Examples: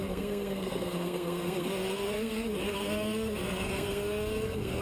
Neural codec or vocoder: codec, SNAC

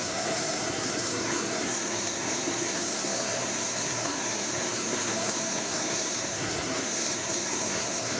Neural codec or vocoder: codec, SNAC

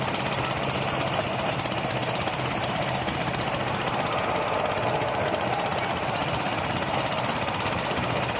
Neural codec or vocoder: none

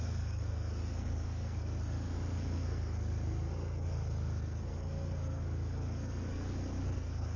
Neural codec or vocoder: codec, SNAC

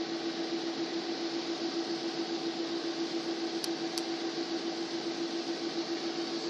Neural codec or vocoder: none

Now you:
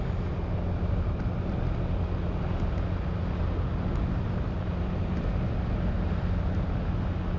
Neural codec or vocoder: none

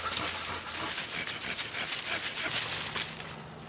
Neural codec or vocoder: none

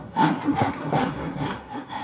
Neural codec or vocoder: codec, SNAC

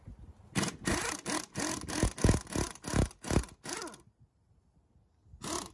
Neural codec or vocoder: none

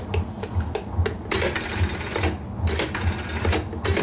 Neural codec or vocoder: none